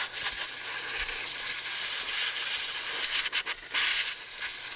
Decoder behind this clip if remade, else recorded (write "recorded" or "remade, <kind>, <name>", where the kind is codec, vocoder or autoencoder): recorded